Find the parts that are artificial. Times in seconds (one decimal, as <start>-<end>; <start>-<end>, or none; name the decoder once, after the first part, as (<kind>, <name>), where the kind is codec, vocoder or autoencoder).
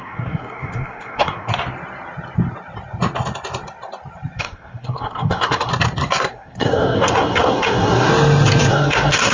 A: 0.0-1.5 (codec, SNAC); 4.4-5.7; 6.3-8.1; 8.7-9.3